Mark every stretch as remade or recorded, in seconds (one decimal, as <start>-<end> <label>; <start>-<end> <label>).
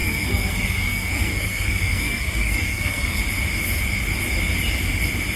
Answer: 0.0-3.2 remade; 3.2-5.4 recorded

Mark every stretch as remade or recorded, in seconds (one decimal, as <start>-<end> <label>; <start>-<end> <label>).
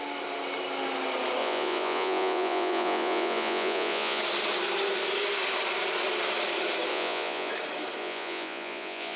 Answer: 0.0-1.4 recorded; 1.4-4.2 remade; 4.2-6.9 recorded; 6.9-7.5 remade; 7.5-8.0 recorded; 8.0-9.2 remade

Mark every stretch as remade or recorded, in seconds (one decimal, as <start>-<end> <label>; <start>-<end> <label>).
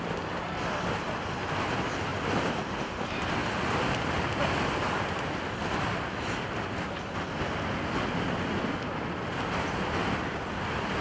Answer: 0.0-11.0 recorded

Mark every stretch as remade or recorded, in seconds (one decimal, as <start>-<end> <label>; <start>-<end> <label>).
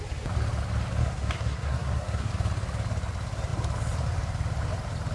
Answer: 0.0-1.0 recorded; 1.0-2.3 remade; 2.3-5.1 recorded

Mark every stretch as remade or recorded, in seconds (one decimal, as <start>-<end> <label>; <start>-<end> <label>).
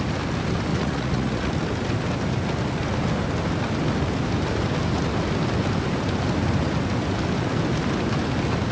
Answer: 0.0-0.7 recorded; 0.7-1.5 remade; 1.5-8.7 recorded